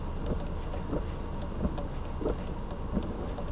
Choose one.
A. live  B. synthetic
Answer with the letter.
A